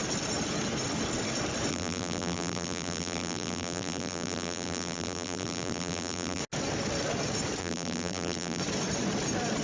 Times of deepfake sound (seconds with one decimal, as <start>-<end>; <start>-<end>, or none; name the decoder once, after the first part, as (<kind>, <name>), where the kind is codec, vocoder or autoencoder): 1.7-6.4 (vocoder, BigVGAN v2); 7.6-8.6